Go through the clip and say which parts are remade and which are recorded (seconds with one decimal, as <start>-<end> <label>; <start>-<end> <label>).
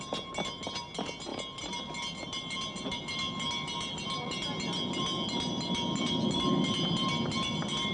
0.0-7.9 recorded